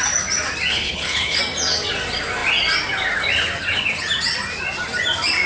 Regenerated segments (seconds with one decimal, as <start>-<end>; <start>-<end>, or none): 0.7-1.4